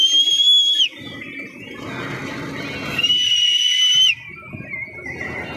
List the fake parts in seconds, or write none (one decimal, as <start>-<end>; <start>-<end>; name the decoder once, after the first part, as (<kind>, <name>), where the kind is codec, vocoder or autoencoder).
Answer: none